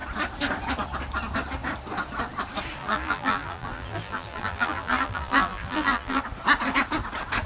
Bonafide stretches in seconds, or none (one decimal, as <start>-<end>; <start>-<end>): 0.0-2.8; 6.2-7.5